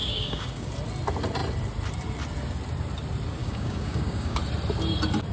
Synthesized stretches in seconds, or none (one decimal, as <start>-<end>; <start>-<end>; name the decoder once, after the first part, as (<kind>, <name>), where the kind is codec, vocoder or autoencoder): 0.0-0.7 (codec, DAC); 3.4-4.4

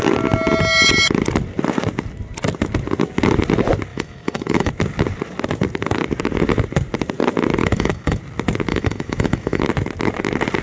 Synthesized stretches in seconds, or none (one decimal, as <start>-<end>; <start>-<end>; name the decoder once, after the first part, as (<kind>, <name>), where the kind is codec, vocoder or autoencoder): 3.9-4.7 (autoencoder, DAC-VAE); 7.6-8.2; 8.7-9.6

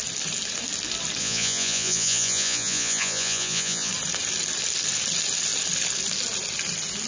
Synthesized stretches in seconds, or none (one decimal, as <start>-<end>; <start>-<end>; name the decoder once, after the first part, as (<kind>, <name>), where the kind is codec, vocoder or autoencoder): 1.2-3.9 (vocoder, Vocos)

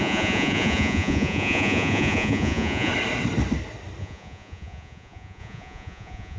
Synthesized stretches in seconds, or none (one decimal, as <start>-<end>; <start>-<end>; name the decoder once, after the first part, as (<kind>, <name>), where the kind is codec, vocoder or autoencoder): 0.0-2.9 (vocoder, Vocos); 4.0-6.4

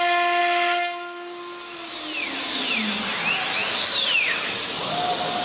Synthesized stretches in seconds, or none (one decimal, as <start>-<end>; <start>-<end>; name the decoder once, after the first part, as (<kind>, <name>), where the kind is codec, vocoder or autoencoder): none

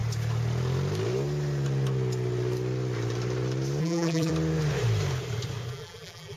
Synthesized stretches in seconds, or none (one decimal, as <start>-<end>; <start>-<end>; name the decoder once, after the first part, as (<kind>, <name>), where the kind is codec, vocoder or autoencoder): 3.8-4.3 (vocoder, BigVGAN v2); 5.7-6.4